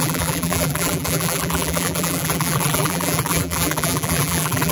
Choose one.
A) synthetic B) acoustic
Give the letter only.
A